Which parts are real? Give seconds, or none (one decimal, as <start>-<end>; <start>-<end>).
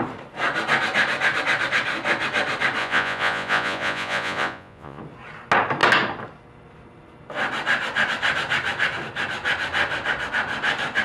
0.0-2.8; 5.0-11.0